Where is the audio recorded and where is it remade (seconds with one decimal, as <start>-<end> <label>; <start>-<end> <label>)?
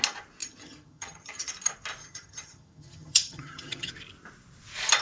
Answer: 0.0-0.4 recorded; 0.4-1.5 remade; 1.5-2.0 recorded; 2.0-3.9 remade; 3.9-5.0 recorded